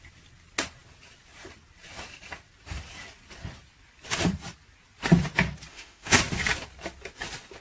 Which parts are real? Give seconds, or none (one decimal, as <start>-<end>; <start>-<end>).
0.0-5.7; 6.2-7.6